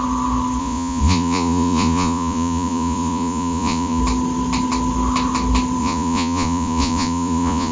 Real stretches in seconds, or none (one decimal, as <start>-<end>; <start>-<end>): 0.0-0.6; 4.0-5.8